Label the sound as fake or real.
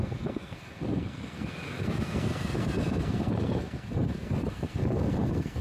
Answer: fake